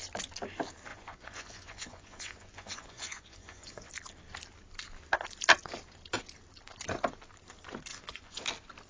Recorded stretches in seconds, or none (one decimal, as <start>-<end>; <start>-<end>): 0.0-0.9; 3.9-7.9; 8.4-8.9